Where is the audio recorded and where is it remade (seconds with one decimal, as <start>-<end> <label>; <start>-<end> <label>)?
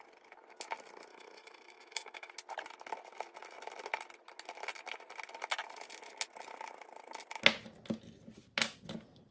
0.0-1.1 recorded; 1.1-2.3 remade; 2.3-9.3 recorded